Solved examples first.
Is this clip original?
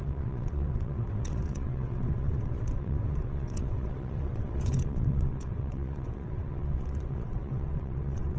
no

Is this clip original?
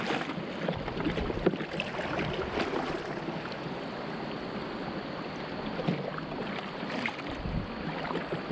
yes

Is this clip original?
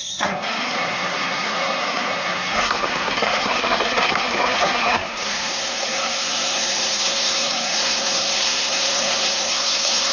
no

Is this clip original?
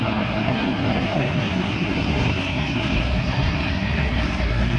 no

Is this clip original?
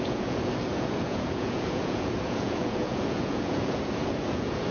no